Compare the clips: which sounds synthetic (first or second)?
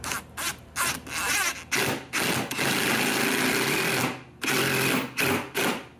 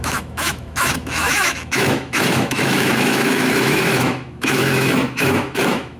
second